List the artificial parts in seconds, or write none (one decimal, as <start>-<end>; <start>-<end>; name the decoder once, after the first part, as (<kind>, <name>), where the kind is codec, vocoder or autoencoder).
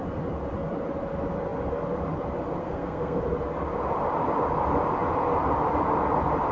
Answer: 2.6-3.2 (codec, SNAC)